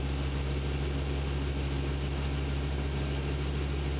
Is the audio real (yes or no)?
yes